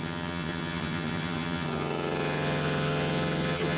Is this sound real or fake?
fake